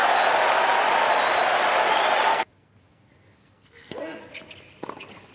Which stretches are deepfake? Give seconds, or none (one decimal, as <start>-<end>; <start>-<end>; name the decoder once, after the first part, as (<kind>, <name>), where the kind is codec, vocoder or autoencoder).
2.3-4.2 (codec, SNAC)